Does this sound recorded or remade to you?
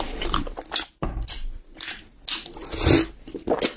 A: recorded